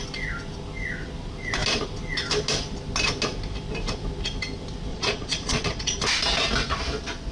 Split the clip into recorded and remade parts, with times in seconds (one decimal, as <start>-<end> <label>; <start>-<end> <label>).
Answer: 0.0-4.9 recorded; 4.9-6.0 remade; 6.0-7.3 recorded